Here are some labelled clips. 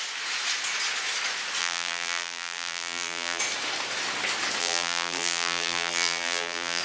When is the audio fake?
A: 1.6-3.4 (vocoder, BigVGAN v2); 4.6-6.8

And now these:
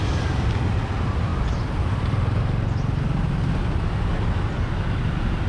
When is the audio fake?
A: none